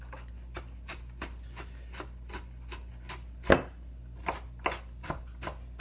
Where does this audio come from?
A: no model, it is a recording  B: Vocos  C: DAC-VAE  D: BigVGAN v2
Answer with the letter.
A